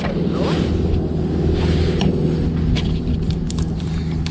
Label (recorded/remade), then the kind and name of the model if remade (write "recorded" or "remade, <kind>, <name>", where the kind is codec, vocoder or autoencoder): recorded